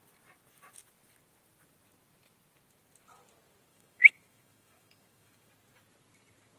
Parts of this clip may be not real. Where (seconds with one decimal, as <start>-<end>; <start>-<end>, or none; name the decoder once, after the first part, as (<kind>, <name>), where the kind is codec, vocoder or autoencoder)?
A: 3.7-5.5 (autoencoder, DAC-VAE)